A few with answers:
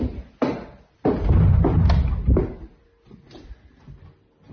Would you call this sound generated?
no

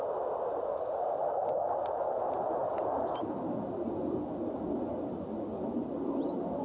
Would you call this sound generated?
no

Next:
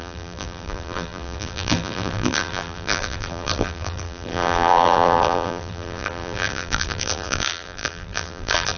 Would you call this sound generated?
yes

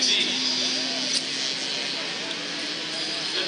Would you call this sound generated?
no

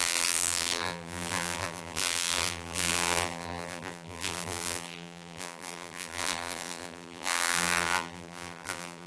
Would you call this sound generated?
yes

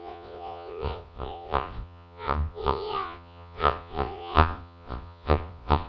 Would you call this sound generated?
yes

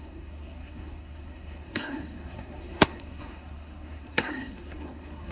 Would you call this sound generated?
yes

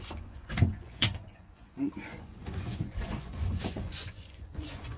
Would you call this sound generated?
yes